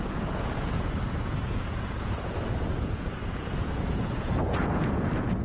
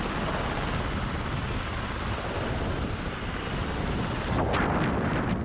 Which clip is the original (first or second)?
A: second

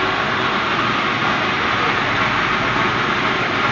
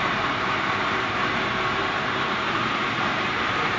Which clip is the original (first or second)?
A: first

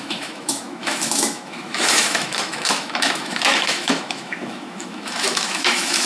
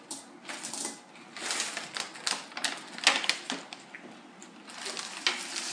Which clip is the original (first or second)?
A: second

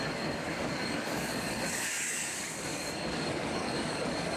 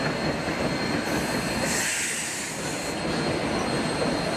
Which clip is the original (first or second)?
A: second